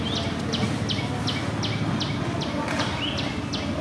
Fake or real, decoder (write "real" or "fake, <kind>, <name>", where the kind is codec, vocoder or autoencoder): real